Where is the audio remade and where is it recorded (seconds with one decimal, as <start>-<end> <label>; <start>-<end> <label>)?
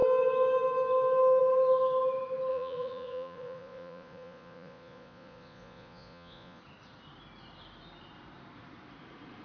0.0-2.5 recorded; 2.5-6.6 remade; 6.6-9.4 recorded